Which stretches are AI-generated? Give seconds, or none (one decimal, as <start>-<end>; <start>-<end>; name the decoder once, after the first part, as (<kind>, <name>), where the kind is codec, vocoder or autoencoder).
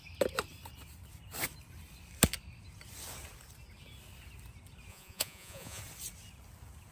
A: 4.9-5.8 (vocoder, Vocos)